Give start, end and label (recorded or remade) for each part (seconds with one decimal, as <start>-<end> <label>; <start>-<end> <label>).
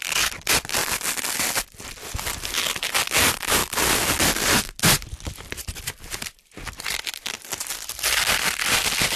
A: 0.0-9.2 remade